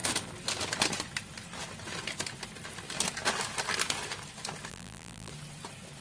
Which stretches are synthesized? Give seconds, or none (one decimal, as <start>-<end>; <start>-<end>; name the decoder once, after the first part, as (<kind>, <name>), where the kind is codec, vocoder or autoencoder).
4.7-5.3 (vocoder, BigVGAN v2)